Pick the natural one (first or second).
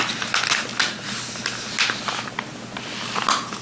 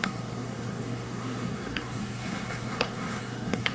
first